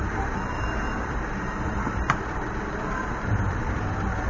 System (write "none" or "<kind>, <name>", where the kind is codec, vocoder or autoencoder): vocoder, BigVGAN v2